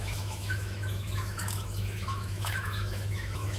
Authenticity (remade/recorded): remade